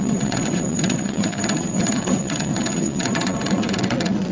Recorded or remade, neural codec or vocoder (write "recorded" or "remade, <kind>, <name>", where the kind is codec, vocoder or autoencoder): remade, vocoder, WaveNeXt